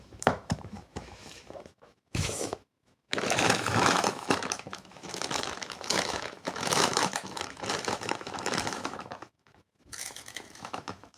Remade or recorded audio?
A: remade